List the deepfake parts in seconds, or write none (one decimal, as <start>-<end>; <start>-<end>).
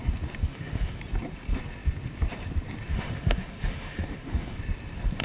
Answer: 0.5-1.0; 2.9-4.6